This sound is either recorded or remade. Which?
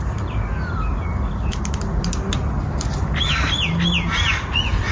recorded